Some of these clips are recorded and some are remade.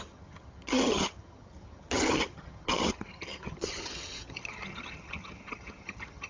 remade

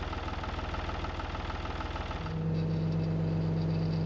recorded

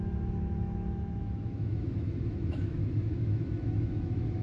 remade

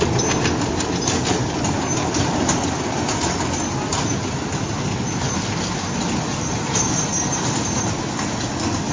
recorded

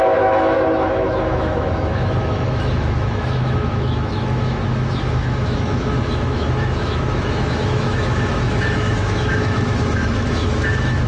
remade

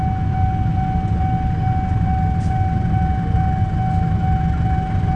recorded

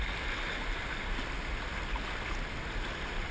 recorded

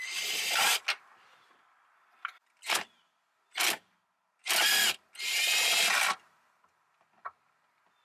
recorded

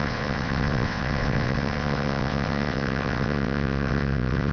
remade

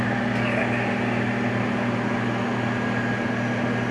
recorded